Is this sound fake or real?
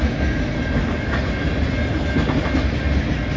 real